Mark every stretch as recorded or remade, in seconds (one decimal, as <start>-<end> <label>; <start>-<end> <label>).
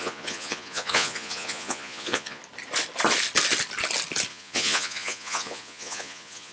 0.0-2.4 remade; 2.4-4.3 recorded; 4.3-6.5 remade